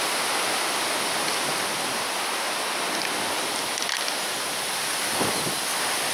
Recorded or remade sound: recorded